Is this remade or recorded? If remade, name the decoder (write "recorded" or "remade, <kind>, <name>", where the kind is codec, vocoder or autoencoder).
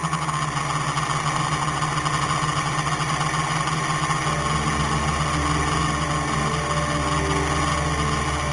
recorded